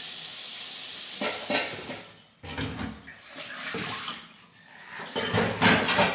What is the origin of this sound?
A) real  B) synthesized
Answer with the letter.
A